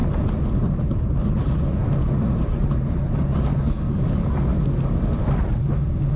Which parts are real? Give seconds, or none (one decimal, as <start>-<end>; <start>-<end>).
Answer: 0.0-3.5; 4.4-6.2